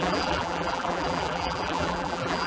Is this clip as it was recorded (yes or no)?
no